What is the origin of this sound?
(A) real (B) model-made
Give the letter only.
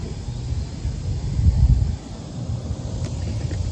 A